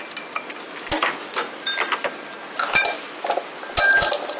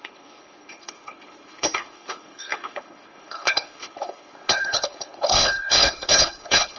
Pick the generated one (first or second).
second